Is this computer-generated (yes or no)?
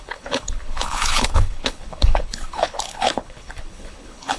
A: yes